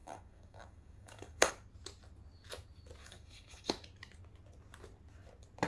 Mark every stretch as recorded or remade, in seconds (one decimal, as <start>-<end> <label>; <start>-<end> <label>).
0.0-1.5 remade; 1.5-3.0 recorded; 3.0-3.7 remade; 3.7-5.7 recorded